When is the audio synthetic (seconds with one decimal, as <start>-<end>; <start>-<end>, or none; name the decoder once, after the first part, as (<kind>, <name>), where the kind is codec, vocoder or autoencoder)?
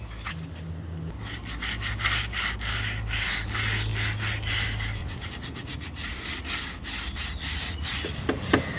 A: 5.0-6.5 (vocoder, Vocos); 7.4-8.1